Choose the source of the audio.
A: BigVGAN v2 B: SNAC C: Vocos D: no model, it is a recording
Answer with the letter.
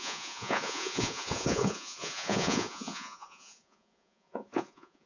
C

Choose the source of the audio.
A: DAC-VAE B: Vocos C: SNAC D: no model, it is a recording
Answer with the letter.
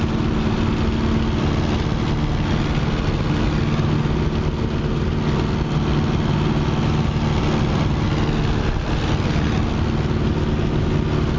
D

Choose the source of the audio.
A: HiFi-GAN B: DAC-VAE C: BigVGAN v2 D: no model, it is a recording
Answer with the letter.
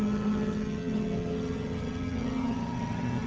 A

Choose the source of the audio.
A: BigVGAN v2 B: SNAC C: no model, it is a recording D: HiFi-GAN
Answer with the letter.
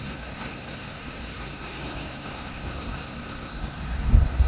B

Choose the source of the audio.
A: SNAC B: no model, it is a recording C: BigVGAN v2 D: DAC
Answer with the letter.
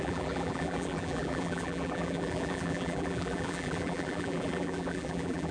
C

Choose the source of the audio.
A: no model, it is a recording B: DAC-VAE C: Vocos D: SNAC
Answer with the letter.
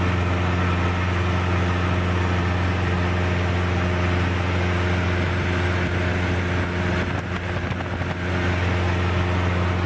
A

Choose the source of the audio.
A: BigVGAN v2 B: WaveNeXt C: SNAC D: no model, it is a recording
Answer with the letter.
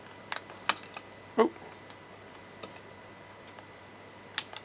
D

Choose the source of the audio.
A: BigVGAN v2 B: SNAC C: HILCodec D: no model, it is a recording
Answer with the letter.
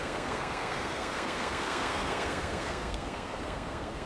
B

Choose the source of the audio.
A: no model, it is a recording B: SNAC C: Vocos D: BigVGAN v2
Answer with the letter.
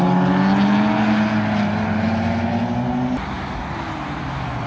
A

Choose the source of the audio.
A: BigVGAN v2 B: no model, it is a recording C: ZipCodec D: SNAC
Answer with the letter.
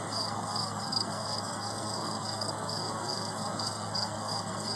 D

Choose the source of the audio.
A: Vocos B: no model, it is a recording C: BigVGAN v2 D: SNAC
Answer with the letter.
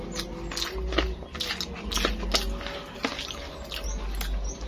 B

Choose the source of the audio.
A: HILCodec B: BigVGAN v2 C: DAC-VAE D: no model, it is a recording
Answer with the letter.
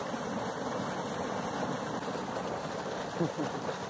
D